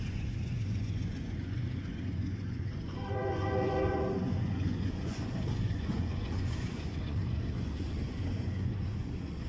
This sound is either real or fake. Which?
fake